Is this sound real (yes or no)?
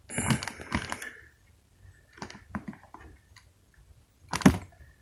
yes